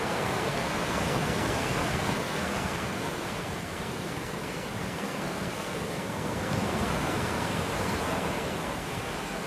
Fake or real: fake